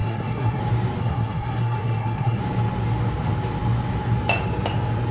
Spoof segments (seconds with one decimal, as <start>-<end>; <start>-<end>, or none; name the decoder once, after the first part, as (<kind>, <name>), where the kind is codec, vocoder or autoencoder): 0.0-0.6 (codec, SNAC); 1.0-2.4